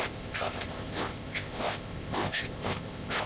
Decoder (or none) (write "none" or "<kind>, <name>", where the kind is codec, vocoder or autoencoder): codec, ZipCodec